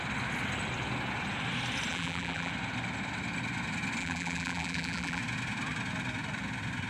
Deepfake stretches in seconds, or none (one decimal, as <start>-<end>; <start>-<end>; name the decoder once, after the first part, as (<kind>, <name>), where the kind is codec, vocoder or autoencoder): 1.9-2.5 (vocoder, BigVGAN v2); 4.0-5.2